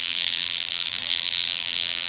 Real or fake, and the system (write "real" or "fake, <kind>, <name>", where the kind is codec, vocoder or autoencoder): fake, vocoder, BigVGAN v2